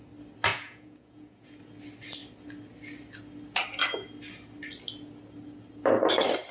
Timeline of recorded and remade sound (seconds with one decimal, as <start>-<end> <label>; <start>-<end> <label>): 0.0-0.5 recorded; 0.5-1.6 remade; 1.6-6.5 recorded